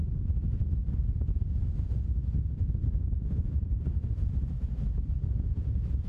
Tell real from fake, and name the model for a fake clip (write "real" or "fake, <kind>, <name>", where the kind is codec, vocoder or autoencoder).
fake, vocoder, BigVGAN v2